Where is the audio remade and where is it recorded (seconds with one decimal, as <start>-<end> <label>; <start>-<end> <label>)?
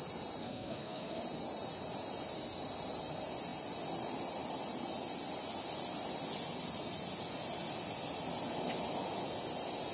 0.0-0.4 recorded; 0.4-1.2 remade; 1.2-9.9 recorded